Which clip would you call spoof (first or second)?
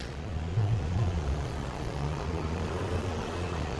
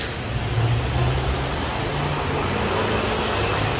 first